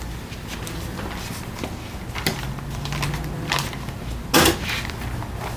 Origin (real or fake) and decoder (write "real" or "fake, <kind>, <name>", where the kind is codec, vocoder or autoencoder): real